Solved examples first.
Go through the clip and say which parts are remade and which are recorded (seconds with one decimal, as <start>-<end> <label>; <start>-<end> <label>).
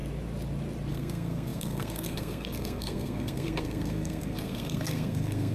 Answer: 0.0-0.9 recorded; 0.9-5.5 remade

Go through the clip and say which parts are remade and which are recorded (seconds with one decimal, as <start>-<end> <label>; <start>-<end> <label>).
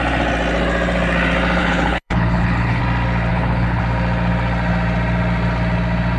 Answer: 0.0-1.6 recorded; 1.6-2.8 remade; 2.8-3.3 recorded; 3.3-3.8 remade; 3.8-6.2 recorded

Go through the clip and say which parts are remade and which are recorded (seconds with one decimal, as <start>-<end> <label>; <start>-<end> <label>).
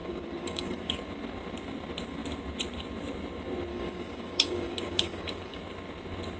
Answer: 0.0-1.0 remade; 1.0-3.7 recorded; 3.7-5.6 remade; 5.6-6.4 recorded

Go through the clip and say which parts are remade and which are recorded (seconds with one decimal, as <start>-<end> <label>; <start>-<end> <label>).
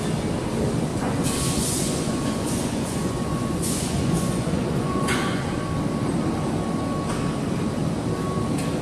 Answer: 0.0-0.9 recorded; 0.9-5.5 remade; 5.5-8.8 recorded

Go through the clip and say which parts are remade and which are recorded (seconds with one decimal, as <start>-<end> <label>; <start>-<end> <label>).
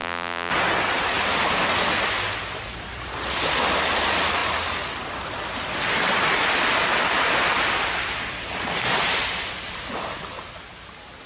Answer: 0.0-0.5 remade; 0.5-11.3 recorded